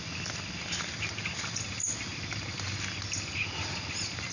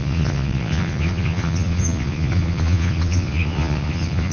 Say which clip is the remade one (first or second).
second